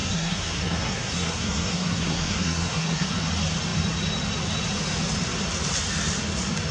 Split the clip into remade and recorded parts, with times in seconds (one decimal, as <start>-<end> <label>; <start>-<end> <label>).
0.0-3.1 remade; 3.1-6.7 recorded